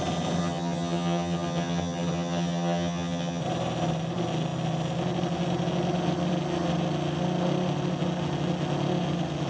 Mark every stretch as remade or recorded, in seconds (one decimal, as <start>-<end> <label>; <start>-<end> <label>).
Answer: 0.0-0.4 recorded; 0.4-3.4 remade; 3.4-9.5 recorded